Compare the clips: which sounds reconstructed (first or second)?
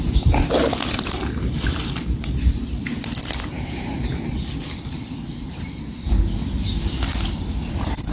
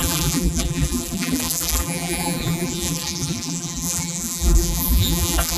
second